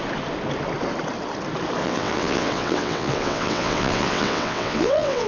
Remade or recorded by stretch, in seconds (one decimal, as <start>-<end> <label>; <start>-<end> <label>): 0.0-1.8 recorded; 1.8-5.3 remade